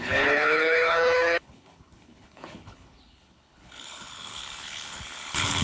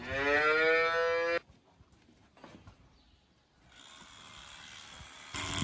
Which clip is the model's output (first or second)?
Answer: first